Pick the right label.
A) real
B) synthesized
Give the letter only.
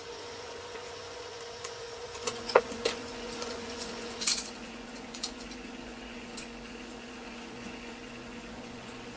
B